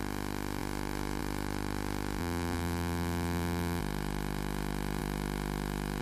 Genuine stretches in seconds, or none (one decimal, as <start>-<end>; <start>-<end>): 0.0-2.2; 3.8-6.0